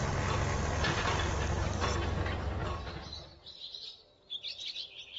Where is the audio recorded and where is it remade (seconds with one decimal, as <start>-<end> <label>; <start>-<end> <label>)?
0.0-1.8 remade; 1.8-2.6 recorded; 2.6-4.2 remade; 4.2-5.2 recorded